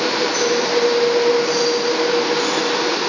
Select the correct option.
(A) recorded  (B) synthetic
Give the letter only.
A